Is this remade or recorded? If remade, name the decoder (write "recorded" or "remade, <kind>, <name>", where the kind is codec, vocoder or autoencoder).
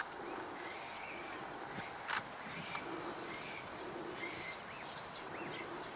recorded